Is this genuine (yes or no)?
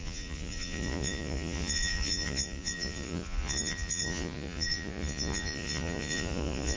no